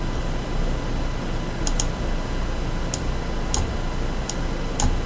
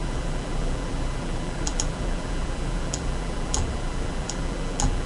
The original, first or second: first